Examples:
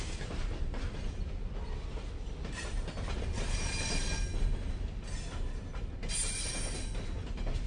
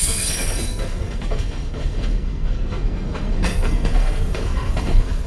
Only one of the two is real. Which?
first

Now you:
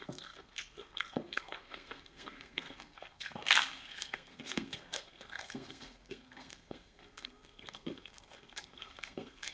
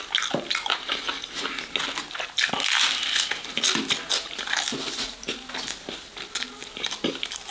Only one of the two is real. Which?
second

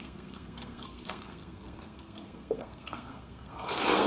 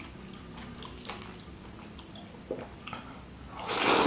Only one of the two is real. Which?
second